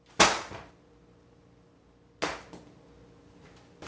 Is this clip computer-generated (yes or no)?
no